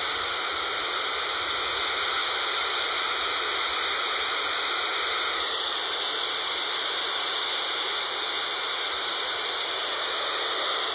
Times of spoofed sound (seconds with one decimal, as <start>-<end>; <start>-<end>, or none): none